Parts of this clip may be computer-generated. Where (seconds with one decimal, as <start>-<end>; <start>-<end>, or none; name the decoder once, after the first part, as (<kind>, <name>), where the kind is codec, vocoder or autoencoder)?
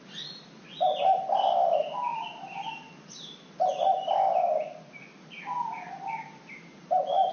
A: none